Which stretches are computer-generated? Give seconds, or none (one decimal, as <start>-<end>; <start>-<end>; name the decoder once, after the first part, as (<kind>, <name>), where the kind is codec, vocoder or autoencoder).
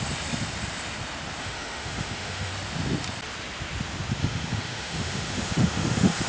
1.4-2.5 (autoencoder, DAC-VAE); 4.2-6.3